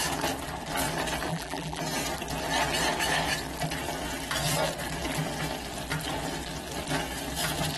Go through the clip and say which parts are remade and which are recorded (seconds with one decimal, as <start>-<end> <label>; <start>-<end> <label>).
0.0-1.3 recorded; 1.3-1.8 remade; 1.8-7.8 recorded